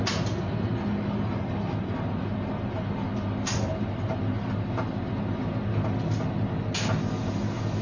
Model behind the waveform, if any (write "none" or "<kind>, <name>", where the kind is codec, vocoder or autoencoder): none